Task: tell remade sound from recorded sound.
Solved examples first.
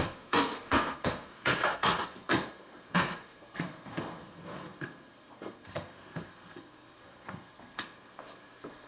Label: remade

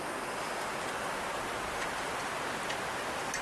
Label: recorded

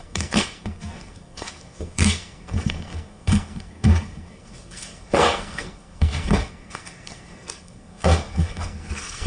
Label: remade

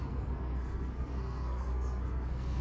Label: remade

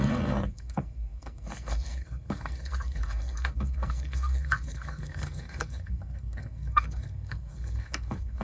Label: remade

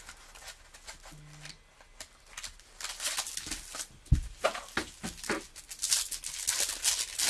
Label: recorded